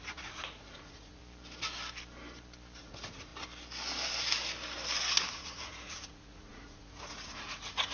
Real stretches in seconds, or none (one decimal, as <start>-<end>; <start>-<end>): 1.2-2.8; 3.3-5.3